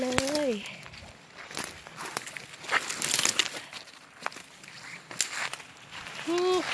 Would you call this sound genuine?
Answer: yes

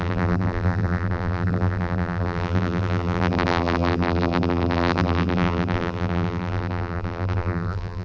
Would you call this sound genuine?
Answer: no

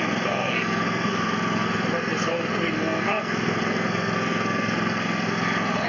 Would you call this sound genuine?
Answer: no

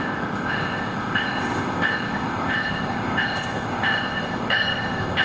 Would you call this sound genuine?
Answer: no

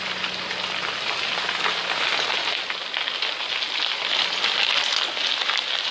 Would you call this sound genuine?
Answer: yes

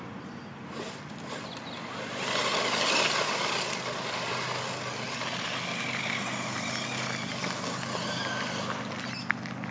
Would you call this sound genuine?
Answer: yes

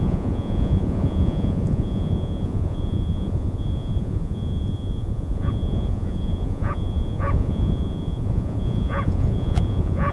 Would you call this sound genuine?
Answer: no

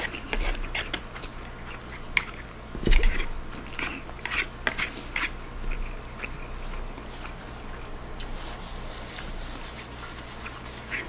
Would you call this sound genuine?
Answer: yes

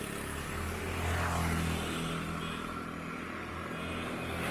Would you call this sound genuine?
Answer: yes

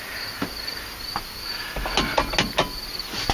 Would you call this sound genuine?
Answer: yes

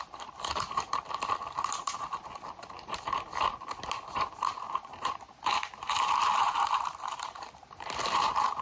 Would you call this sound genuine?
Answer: no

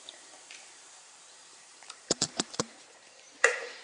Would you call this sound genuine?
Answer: no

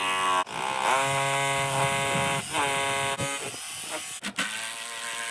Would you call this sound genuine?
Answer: yes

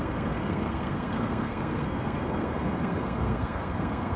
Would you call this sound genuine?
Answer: no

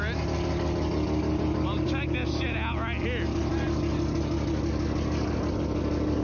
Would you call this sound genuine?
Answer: yes